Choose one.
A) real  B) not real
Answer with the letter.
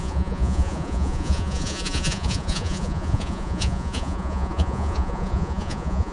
B